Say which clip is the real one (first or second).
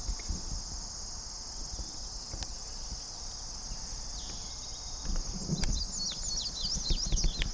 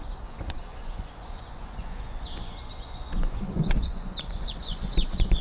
first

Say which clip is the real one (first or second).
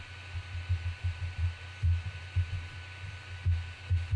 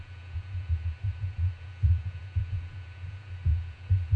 first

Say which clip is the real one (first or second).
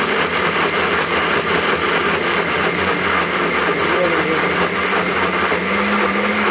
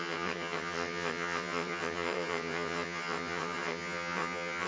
first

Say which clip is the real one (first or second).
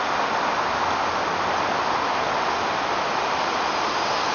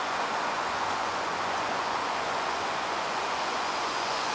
first